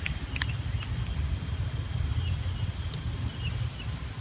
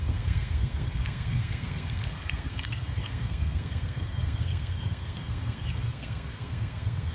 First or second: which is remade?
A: second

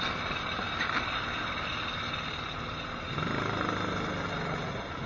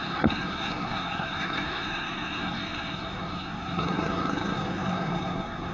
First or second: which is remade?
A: second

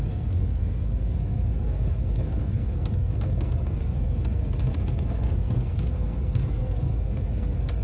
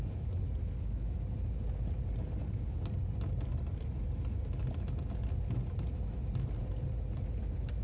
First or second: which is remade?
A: first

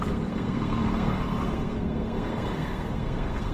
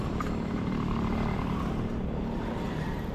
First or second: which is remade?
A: first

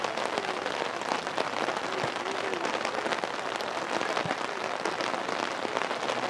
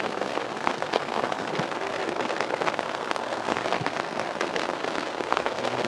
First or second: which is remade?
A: second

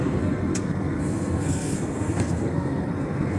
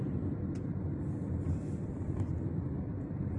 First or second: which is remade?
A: first